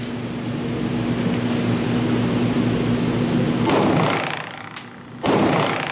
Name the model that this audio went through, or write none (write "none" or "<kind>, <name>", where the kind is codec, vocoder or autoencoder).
none